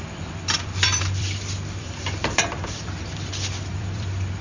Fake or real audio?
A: fake